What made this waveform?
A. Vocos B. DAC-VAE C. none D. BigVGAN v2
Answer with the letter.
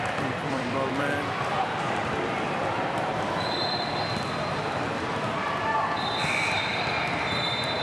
D